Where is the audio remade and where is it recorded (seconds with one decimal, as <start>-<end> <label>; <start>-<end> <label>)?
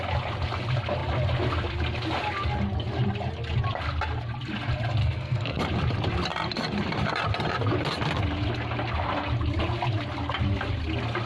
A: 0.0-5.0 recorded; 5.0-5.6 remade; 5.6-11.3 recorded